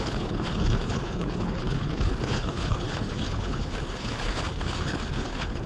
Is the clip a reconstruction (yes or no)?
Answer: yes